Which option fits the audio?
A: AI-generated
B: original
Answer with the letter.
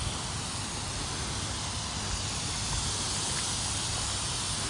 B